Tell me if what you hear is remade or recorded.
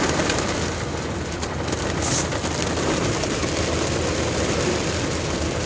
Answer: recorded